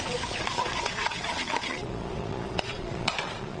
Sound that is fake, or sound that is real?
fake